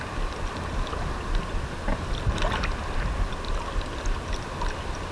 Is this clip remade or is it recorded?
recorded